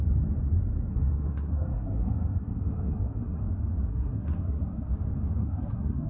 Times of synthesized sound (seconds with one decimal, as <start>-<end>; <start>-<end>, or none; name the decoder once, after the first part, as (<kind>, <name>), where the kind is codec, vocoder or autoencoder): 0.9-3.4 (codec, SNAC); 3.9-4.9; 5.4-6.1